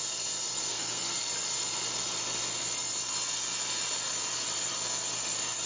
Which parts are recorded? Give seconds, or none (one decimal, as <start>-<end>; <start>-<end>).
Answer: 0.0-0.7; 1.2-5.7